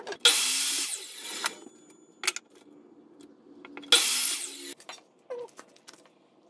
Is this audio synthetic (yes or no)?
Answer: no